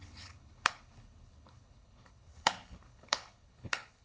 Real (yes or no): no